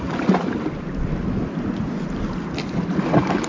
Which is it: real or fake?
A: real